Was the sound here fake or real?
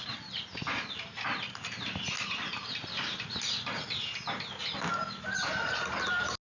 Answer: real